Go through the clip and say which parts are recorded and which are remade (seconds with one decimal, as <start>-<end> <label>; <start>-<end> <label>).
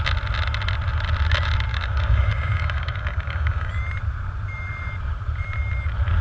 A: 0.0-1.7 recorded; 1.7-3.7 remade; 3.7-6.2 recorded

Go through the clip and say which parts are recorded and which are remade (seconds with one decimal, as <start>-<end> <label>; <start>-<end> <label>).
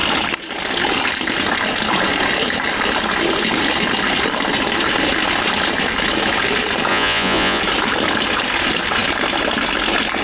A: 0.0-6.9 recorded; 6.9-7.6 remade; 7.6-10.2 recorded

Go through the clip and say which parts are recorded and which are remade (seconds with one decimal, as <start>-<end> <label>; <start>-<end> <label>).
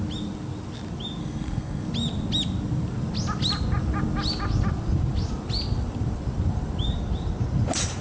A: 0.0-1.2 recorded; 1.2-1.9 remade; 1.9-8.0 recorded